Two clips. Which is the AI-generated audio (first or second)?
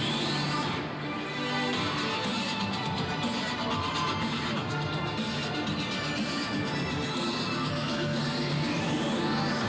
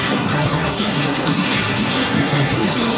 second